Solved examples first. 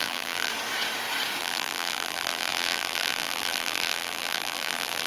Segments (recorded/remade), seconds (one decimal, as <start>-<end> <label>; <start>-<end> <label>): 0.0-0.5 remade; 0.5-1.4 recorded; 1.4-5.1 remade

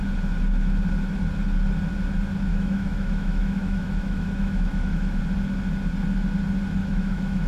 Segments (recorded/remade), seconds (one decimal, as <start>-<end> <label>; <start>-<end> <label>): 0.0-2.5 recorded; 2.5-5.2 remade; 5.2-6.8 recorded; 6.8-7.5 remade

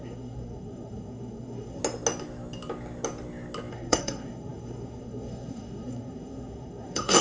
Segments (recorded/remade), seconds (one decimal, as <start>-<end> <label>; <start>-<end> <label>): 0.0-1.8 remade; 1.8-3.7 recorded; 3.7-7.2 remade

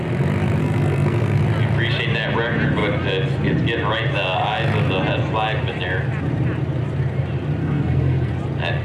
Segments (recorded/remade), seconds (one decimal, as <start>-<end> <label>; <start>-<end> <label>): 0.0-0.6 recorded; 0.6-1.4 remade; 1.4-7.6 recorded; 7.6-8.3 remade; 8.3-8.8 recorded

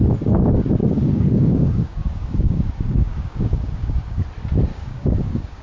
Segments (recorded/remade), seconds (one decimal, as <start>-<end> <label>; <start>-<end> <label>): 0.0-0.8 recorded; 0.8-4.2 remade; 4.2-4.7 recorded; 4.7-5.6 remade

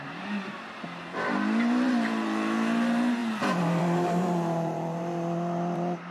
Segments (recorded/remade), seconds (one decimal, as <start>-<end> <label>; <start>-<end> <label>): 0.0-3.2 remade; 3.2-3.8 recorded; 3.8-6.1 remade